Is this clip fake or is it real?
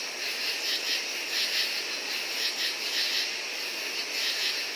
real